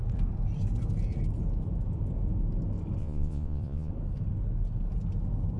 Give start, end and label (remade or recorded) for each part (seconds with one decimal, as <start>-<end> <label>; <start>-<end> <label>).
0.0-3.0 recorded; 3.0-3.9 remade; 3.9-5.6 recorded